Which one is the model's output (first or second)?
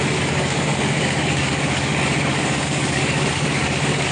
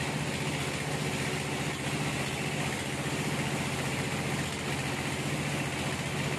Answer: first